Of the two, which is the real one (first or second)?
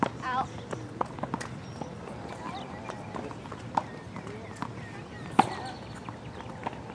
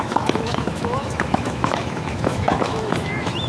first